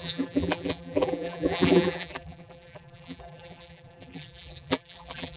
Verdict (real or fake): fake